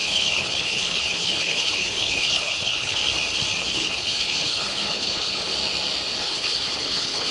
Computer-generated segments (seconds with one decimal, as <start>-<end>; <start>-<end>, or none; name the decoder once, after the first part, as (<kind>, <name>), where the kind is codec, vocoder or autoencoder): 0.0-3.0 (codec, HILCodec); 3.6-5.5; 6.2-7.3